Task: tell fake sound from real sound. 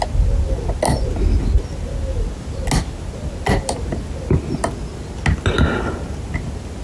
real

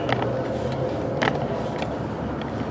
real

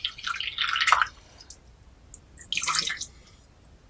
real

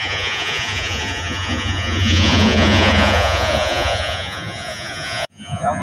fake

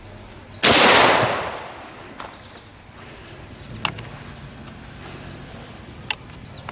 real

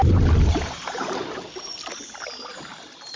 real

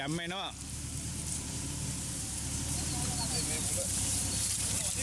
fake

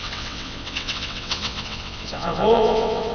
fake